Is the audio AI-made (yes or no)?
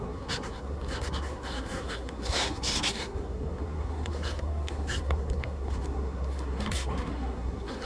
yes